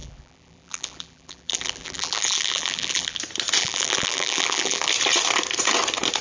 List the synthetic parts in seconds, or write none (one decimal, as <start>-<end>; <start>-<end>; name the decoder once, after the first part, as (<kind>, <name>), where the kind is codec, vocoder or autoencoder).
0.0-3.2 (vocoder, BigVGAN v2); 3.6-4.9